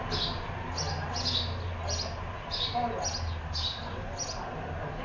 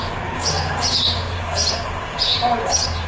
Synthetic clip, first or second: second